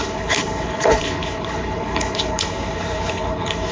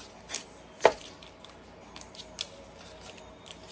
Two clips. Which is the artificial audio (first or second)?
first